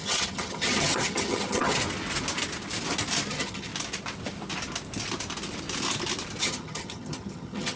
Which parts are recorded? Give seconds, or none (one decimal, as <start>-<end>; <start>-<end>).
1.8-3.3; 3.7-6.4